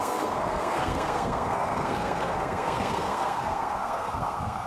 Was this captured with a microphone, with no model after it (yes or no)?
no